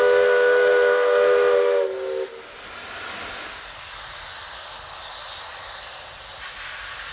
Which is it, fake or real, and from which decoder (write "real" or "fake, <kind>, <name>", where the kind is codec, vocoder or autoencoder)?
real